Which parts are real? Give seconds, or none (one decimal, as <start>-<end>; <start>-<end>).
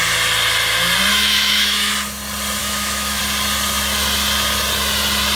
0.0-1.1; 1.9-2.6; 3.2-5.4